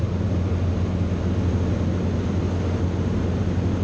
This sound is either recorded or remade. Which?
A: recorded